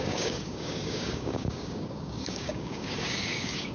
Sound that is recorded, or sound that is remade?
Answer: remade